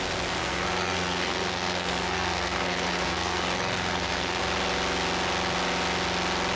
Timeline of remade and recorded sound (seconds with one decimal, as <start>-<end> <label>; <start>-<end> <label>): 0.0-0.4 recorded; 0.4-4.4 remade; 4.4-6.6 recorded